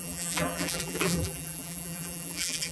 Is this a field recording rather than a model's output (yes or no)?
no